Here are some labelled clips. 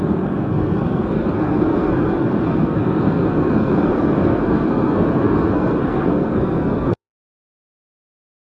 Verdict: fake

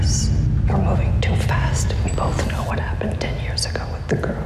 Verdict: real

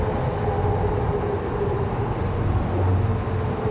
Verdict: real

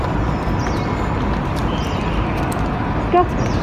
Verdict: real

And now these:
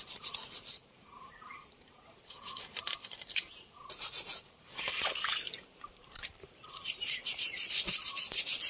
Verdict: fake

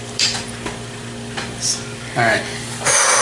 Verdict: real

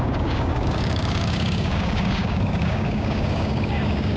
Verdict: fake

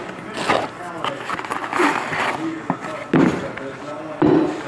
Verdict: real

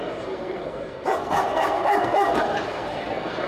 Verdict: fake